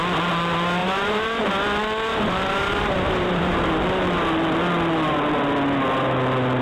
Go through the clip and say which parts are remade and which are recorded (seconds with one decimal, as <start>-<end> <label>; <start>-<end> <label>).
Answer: 0.0-0.8 recorded; 0.8-1.5 remade; 1.5-2.1 recorded; 2.1-3.7 remade; 3.7-6.6 recorded